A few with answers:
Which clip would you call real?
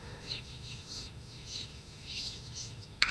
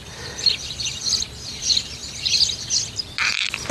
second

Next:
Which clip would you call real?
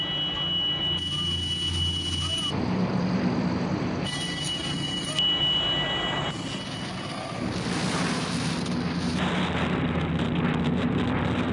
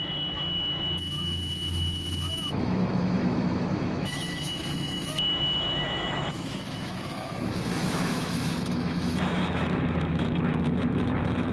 first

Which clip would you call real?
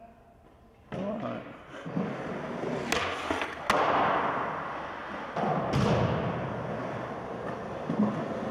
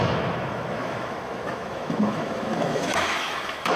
first